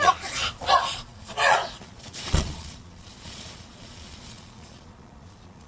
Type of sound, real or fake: fake